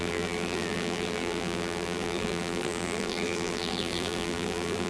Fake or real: fake